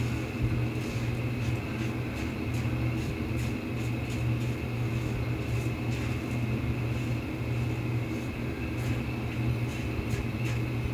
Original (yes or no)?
yes